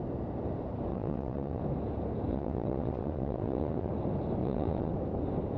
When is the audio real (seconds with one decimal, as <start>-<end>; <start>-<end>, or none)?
0.0-0.9; 1.6-2.3; 3.9-4.4; 4.9-5.6